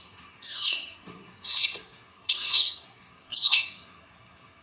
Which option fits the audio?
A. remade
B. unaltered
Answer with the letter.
A